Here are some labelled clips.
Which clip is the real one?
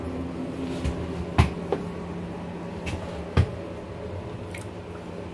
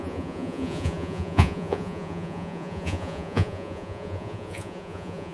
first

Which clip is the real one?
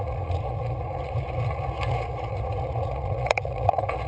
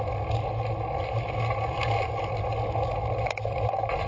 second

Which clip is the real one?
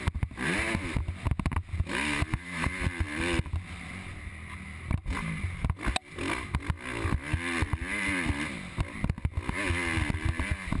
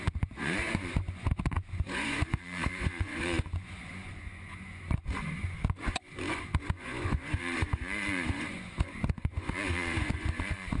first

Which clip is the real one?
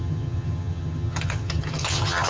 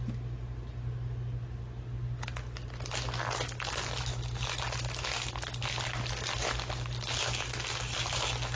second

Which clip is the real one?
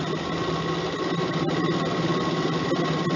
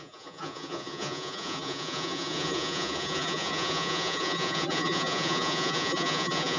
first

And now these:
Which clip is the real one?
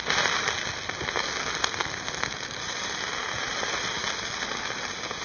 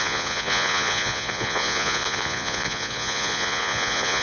first